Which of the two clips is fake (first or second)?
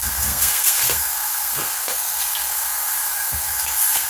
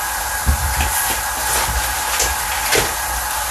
first